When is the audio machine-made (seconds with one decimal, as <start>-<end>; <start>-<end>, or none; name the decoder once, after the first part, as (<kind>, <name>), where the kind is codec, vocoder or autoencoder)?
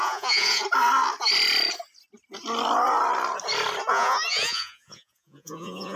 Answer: 0.0-0.6 (vocoder, Vocos); 3.9-6.0